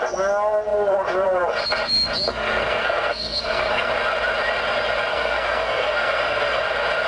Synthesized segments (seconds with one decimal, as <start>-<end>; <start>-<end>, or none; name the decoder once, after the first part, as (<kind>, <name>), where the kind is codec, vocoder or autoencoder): 2.3-3.9 (codec, SNAC); 5.1-6.6